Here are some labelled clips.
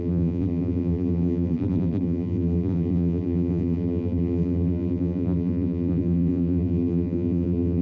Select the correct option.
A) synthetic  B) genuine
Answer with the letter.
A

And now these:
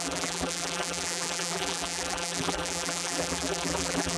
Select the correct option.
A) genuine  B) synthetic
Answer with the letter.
B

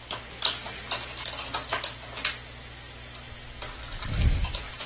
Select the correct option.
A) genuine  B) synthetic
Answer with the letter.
A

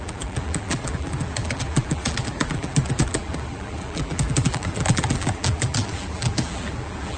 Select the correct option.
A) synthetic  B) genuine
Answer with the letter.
A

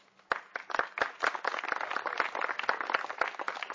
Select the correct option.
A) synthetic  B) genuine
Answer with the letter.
B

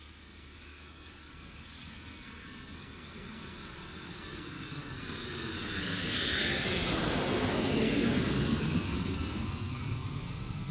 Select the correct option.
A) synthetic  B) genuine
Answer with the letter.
A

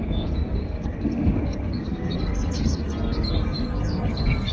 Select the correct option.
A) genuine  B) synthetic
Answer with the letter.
B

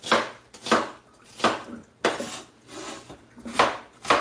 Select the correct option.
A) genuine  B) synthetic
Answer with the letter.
A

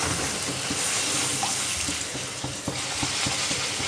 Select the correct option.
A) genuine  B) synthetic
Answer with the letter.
A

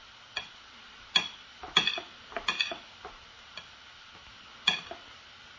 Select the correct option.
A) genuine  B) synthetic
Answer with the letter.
A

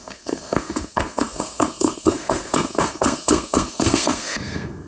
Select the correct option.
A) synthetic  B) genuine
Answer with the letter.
A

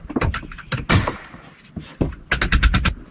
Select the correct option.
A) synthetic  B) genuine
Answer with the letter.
B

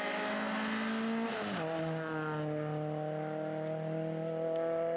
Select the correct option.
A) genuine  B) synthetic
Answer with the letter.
A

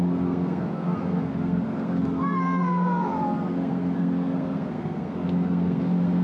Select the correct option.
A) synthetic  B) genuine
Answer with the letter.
A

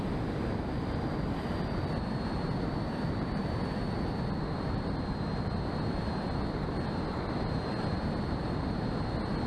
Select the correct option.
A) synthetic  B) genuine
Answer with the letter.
B